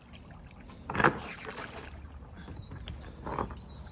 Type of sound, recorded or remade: recorded